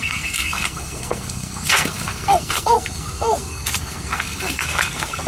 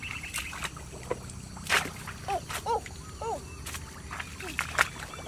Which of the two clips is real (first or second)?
second